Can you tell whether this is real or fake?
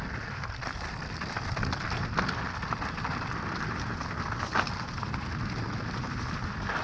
real